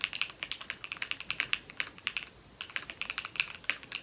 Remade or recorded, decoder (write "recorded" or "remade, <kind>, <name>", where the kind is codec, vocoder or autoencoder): recorded